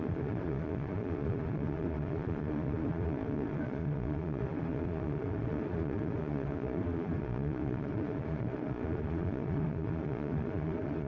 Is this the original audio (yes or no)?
no